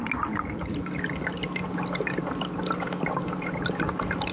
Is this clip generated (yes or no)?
no